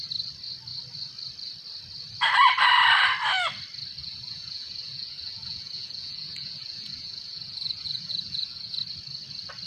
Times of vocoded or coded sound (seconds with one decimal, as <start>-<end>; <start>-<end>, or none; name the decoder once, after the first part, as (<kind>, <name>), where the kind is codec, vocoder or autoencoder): 4.0-8.8 (vocoder, Vocos)